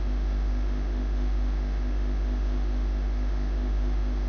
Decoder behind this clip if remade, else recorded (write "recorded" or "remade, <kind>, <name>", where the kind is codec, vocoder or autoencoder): remade, autoencoder, DAC-VAE